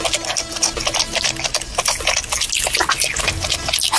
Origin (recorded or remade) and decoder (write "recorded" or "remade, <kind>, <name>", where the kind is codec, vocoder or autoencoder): recorded